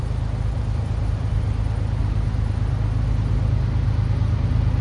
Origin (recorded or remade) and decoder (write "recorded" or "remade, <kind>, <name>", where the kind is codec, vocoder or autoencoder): recorded